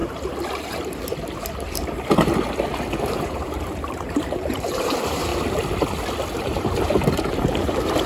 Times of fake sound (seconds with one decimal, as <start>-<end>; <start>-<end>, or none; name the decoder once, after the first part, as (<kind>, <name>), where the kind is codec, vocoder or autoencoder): 3.0-5.3 (vocoder, BigVGAN v2); 6.4-8.1